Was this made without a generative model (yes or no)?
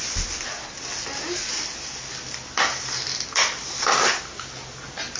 yes